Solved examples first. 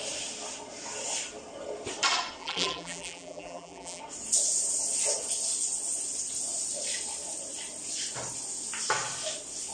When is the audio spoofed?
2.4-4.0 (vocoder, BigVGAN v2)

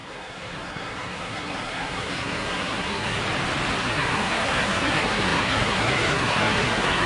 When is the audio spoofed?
0.0-3.2 (codec, SNAC); 3.8-7.1

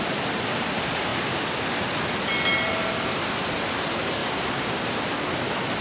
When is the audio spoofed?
4.2-4.8 (codec, DAC)

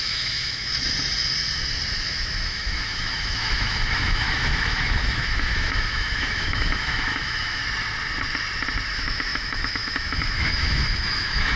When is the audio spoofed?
0.0-0.7 (autoencoder, DAC-VAE); 2.0-7.6; 8.9-11.6

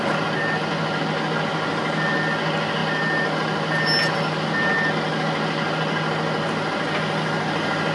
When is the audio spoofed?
none

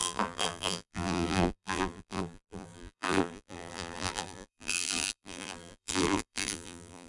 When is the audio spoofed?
0.0-7.1 (vocoder, BigVGAN v2)

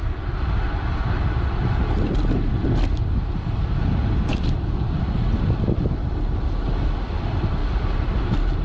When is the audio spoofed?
none